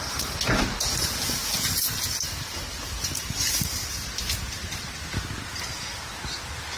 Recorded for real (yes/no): yes